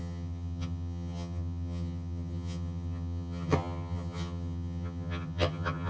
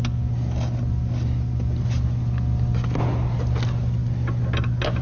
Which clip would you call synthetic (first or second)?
first